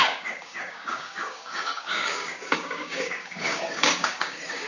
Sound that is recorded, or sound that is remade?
remade